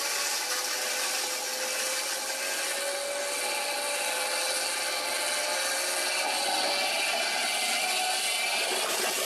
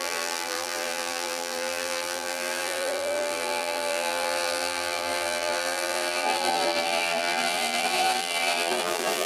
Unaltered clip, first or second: first